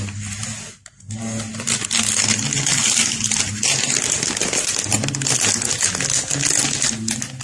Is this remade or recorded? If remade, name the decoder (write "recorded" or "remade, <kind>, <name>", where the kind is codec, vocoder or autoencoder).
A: recorded